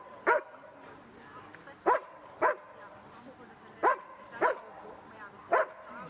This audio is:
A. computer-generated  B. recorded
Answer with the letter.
B